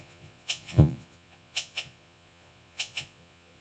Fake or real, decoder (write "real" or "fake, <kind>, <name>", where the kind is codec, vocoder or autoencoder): fake, vocoder, Vocos